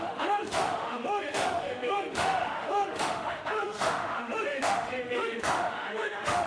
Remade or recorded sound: remade